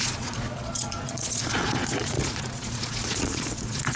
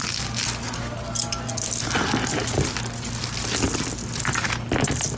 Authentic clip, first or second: second